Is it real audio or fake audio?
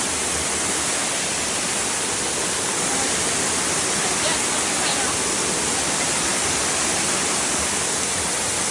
real